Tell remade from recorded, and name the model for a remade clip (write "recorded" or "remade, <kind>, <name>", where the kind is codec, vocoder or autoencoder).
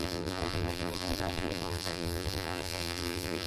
remade, vocoder, BigVGAN v2